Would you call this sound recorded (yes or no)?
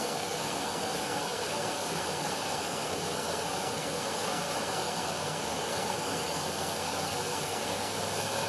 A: no